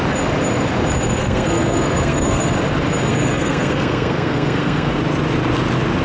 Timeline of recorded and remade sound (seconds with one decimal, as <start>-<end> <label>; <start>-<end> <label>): 0.0-1.2 recorded; 1.2-2.5 remade; 2.5-3.1 recorded; 3.1-5.0 remade; 5.0-6.0 recorded